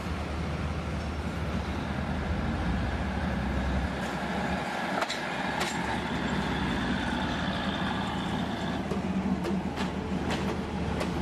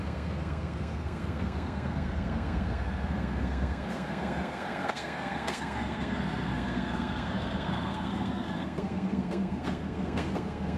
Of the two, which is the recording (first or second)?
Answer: first